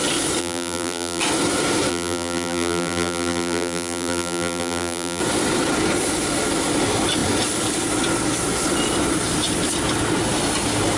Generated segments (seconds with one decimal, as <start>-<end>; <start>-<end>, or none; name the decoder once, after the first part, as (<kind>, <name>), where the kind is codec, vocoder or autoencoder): 0.4-1.2 (vocoder, BigVGAN v2); 1.9-5.2